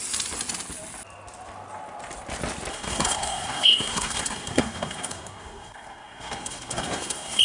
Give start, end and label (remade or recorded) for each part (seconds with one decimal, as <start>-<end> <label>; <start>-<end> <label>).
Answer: 0.0-2.7 recorded; 2.7-7.4 remade